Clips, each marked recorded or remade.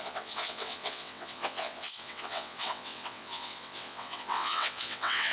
remade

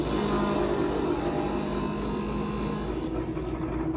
recorded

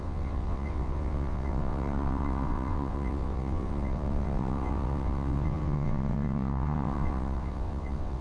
remade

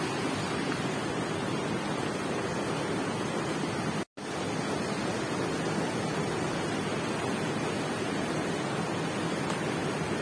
recorded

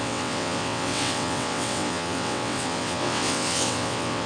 remade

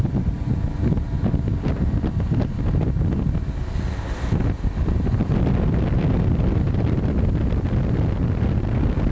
recorded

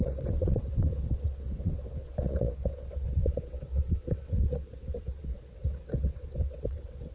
remade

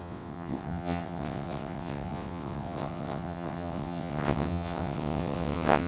remade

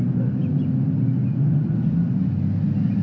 recorded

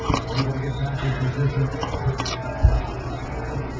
recorded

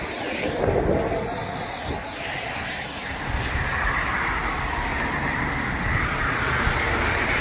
recorded